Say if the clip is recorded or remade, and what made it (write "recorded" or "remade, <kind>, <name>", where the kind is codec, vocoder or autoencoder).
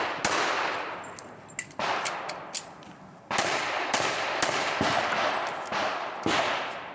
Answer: recorded